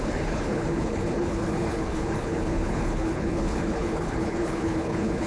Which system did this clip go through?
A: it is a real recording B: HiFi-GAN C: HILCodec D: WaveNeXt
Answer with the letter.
C